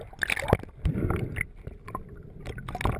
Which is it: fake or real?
real